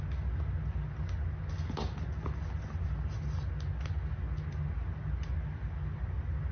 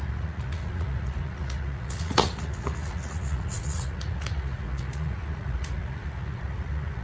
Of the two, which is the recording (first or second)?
first